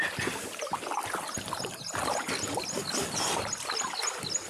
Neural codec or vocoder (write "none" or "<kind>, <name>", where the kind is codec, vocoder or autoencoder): none